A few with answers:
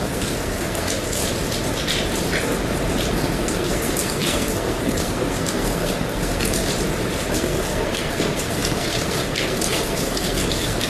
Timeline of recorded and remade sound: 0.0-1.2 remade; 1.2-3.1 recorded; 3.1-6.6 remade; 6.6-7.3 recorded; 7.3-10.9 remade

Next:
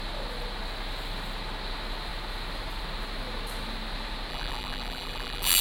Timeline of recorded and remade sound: 0.0-4.3 recorded; 4.3-5.6 remade

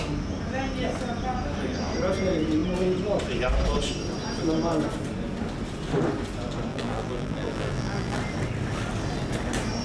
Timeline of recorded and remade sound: 0.0-6.7 recorded; 6.7-8.2 remade; 8.2-9.8 recorded